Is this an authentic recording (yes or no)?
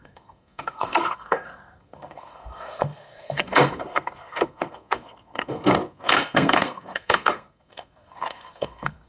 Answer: no